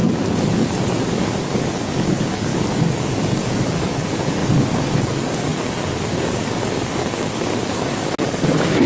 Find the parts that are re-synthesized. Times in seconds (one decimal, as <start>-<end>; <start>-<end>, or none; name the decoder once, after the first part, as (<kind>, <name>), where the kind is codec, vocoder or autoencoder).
1.1-8.9 (codec, DAC)